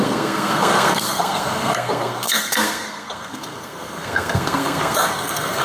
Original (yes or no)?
no